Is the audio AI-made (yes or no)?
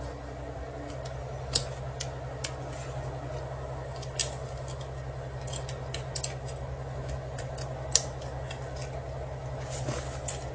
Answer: no